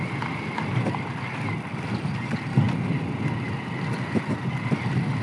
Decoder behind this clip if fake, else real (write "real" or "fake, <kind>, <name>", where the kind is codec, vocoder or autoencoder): real